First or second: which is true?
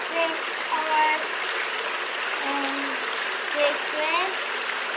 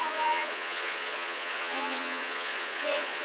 first